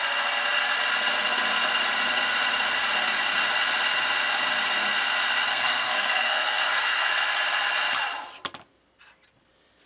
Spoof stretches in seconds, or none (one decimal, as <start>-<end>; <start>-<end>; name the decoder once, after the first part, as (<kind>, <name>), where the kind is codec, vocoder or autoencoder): 5.5-7.1 (codec, SNAC)